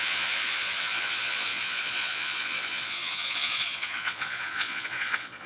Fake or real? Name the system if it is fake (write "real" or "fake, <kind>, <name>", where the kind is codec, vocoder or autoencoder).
fake, vocoder, Vocos